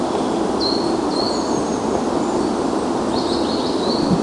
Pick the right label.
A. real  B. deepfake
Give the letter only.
A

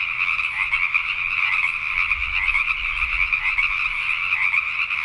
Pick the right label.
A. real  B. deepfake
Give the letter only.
A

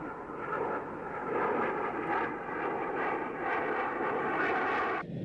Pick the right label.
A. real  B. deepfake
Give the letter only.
A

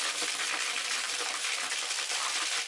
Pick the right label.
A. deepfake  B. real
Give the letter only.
A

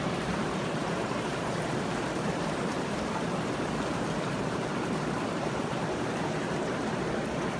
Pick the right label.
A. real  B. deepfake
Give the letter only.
B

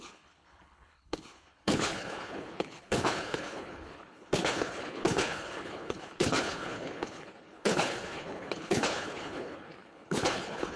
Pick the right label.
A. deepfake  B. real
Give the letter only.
A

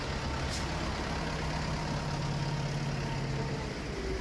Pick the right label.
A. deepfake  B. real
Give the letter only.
B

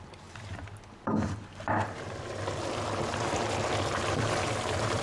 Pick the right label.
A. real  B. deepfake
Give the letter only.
B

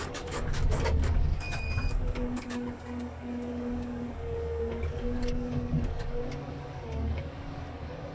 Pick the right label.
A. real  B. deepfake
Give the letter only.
B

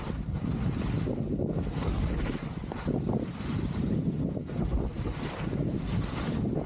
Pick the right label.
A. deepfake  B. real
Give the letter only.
B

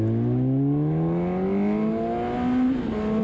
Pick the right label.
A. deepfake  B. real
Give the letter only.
B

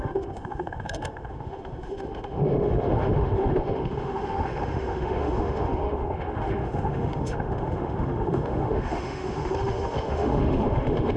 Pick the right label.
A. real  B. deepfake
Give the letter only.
B